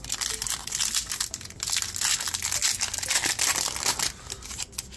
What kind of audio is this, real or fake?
real